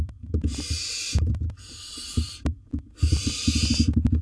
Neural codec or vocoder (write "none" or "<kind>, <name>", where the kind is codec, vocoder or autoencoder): none